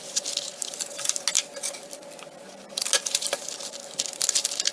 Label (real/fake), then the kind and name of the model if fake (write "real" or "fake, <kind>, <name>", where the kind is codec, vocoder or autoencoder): real